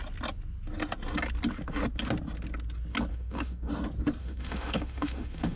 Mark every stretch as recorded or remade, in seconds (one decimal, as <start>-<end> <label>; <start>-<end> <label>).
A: 0.0-3.1 recorded; 3.1-3.7 remade; 3.7-4.2 recorded; 4.2-5.6 remade